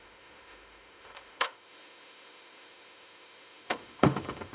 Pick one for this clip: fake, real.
fake